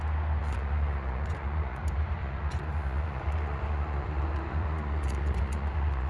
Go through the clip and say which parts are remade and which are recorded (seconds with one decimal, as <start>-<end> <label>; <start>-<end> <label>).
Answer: 0.0-0.4 recorded; 0.4-1.8 remade; 1.8-2.2 recorded; 2.2-6.1 remade